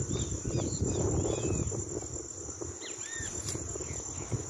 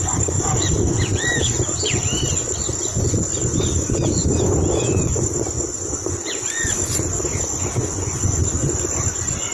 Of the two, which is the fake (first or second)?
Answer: second